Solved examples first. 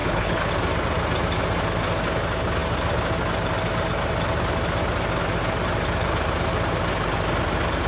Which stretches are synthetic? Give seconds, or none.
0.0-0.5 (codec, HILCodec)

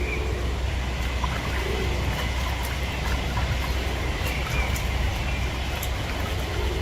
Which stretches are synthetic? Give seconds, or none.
none

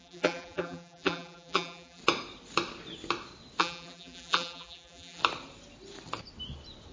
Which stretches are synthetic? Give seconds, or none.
0.0-2.0 (vocoder, BigVGAN v2); 3.6-5.2

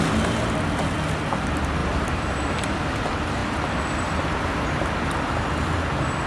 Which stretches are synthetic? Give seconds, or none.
1.8-2.4 (vocoder, BigVGAN v2)

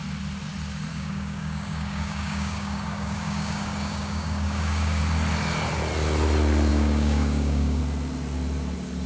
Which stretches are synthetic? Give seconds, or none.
0.9-5.0 (codec, DAC); 6.7-7.8

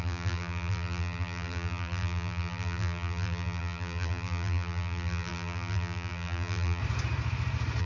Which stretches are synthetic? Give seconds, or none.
0.0-6.8 (vocoder, BigVGAN v2)